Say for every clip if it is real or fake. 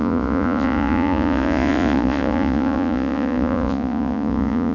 fake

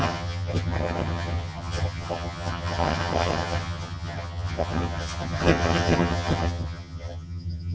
fake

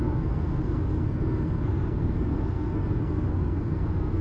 fake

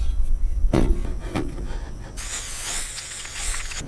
fake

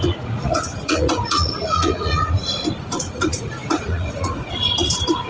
fake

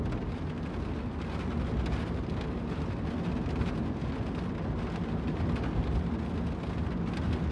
real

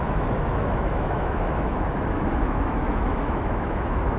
fake